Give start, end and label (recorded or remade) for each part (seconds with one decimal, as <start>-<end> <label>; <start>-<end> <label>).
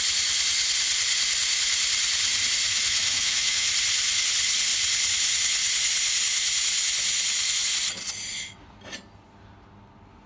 0.0-2.7 recorded; 2.7-3.7 remade; 3.7-10.3 recorded